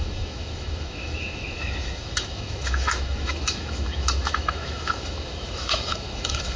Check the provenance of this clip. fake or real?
fake